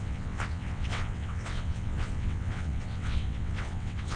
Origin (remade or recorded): remade